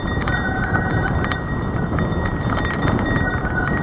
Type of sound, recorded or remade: recorded